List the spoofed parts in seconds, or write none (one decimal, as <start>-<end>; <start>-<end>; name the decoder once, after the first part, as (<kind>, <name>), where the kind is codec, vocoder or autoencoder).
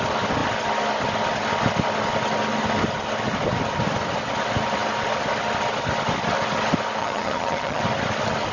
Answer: 7.0-7.8 (vocoder, HiFi-GAN)